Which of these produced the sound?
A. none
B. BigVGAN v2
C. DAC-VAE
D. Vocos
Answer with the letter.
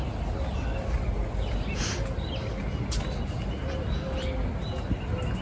A